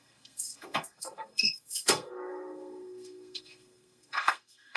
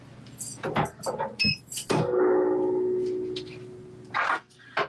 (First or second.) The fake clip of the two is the first